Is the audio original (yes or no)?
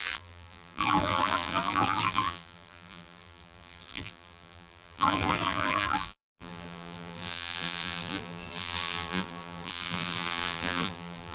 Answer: no